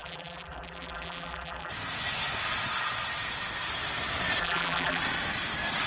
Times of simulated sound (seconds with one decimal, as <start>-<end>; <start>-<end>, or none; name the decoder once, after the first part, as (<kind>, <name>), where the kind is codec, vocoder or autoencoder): 0.0-1.7 (vocoder, BigVGAN v2); 4.4-5.0